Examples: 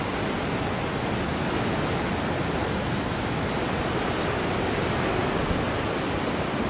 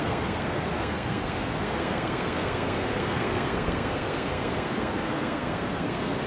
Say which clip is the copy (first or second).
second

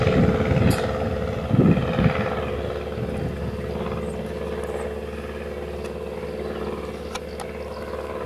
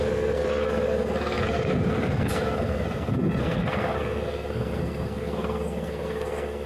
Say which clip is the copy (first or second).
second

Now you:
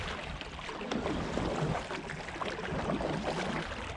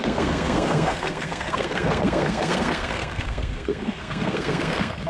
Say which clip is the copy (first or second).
second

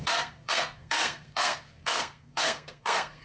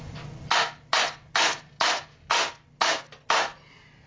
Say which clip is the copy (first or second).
first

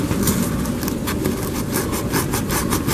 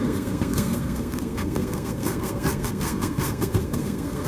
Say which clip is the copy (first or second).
second